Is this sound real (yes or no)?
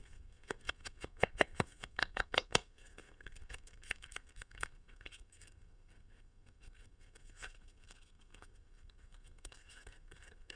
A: no